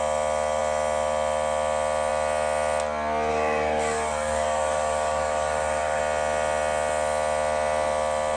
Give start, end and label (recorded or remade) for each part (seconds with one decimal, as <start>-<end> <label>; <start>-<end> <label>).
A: 0.0-3.3 recorded; 3.3-6.0 remade; 6.0-8.4 recorded